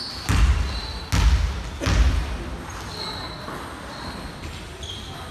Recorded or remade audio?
recorded